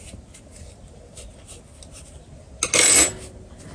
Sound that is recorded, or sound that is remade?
recorded